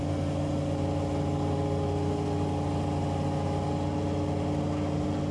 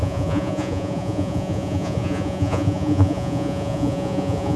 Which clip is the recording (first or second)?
first